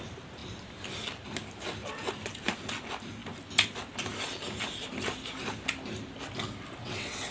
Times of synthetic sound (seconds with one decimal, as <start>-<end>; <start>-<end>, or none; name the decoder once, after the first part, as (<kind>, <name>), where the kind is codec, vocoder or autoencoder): 6.8-7.3 (vocoder, WaveNeXt)